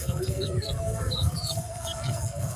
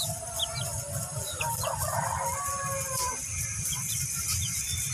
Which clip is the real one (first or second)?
second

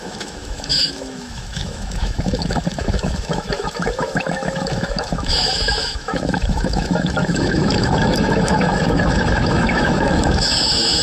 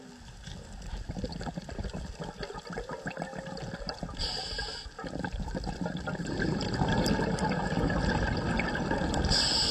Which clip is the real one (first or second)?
second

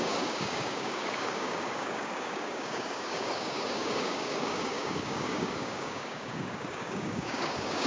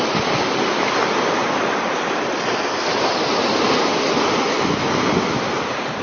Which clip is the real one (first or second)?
second